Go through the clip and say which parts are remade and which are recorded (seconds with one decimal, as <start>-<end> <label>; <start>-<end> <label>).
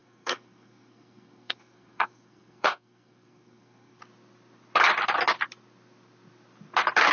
0.0-4.0 remade; 4.0-7.1 recorded